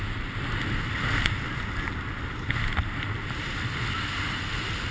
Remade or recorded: recorded